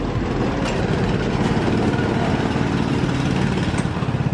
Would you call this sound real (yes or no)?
yes